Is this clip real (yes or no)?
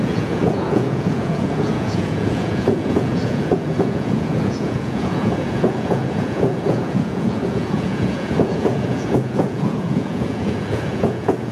no